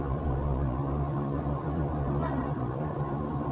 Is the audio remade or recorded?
remade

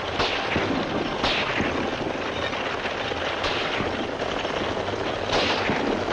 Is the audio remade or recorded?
recorded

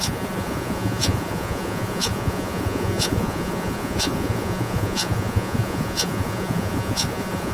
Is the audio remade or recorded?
remade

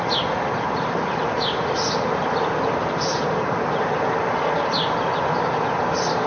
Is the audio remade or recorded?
recorded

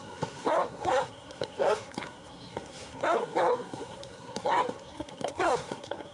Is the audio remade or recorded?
remade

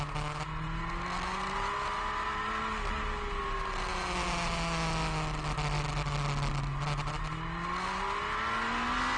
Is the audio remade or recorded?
recorded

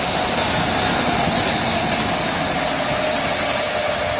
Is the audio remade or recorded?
recorded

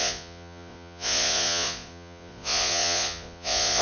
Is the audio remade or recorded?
remade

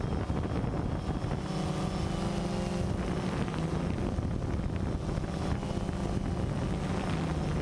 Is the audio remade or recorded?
recorded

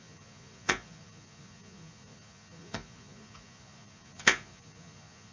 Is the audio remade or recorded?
remade